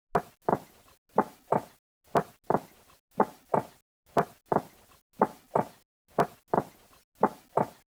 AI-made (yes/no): no